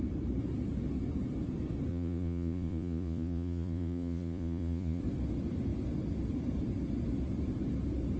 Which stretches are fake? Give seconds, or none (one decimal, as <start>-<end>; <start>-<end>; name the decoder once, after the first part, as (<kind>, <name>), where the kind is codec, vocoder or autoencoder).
1.9-5.0 (vocoder, Vocos)